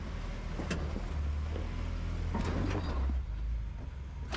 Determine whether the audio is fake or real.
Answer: real